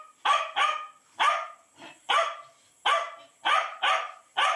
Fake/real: real